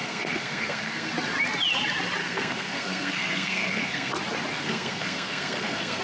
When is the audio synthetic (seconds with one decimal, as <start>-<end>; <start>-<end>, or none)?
0.0-1.1; 2.2-4.1; 4.5-6.0